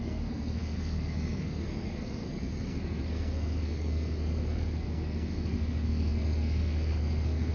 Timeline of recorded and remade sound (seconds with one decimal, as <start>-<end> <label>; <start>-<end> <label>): 0.0-7.5 remade